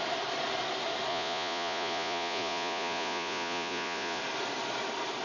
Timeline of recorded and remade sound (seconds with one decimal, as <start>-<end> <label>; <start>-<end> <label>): 0.0-1.1 recorded; 1.1-4.2 remade; 4.2-5.2 recorded